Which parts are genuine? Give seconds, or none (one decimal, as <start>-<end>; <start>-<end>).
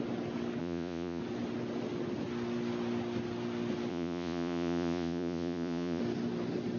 0.0-0.6; 1.2-3.9; 6.0-6.8